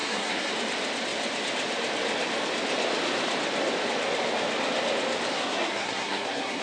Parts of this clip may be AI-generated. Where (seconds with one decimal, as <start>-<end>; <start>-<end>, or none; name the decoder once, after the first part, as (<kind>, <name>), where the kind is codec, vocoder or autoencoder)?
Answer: 0.0-0.5 (codec, SNAC); 5.3-6.6